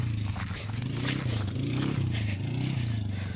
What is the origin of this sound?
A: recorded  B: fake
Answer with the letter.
A